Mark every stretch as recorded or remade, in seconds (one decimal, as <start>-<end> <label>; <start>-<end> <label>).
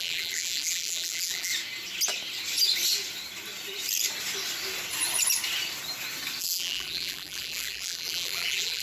0.0-1.5 remade; 1.5-6.4 recorded; 6.4-8.8 remade